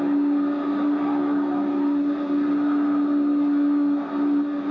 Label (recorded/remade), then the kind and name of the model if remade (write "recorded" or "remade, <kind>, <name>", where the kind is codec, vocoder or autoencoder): recorded